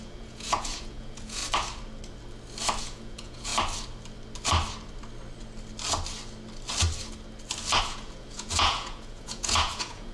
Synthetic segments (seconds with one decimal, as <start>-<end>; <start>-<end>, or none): 0.0-1.4; 2.8-3.5; 7.8-10.1